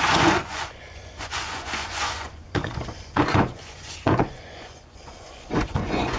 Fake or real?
fake